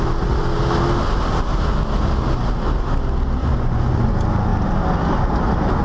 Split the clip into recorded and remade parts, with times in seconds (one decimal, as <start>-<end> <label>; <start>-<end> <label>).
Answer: 0.0-3.4 recorded; 3.4-4.1 remade; 4.1-5.8 recorded